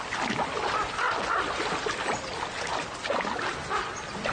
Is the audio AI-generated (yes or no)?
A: no